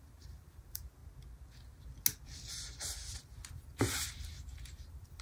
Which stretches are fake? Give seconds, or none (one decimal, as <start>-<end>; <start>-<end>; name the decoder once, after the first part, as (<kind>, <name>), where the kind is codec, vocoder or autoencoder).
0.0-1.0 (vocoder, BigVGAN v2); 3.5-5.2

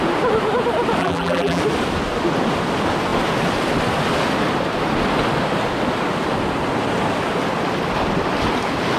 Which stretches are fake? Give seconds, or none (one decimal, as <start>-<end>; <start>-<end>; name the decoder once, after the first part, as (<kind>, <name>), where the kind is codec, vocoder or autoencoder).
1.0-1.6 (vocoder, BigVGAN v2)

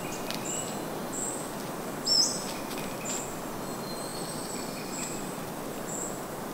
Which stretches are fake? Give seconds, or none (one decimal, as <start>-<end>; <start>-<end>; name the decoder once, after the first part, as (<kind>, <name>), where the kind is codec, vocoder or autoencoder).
none

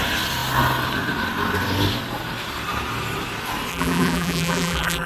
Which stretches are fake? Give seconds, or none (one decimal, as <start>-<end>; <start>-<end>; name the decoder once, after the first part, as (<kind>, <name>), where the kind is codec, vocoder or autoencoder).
3.7-5.1 (vocoder, BigVGAN v2)

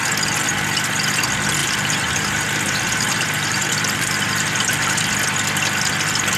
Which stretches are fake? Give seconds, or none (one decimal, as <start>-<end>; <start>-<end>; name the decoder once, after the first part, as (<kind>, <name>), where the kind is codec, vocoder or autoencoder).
1.6-5.1 (vocoder, BigVGAN v2)

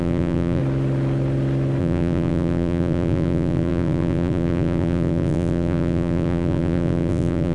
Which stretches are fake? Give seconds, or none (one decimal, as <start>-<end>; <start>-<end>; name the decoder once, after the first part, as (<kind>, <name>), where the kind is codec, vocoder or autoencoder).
0.0-0.6 (vocoder, BigVGAN v2); 1.8-7.5